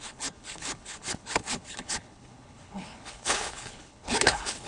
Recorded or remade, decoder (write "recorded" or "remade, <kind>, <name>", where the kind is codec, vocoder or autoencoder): remade, codec, HILCodec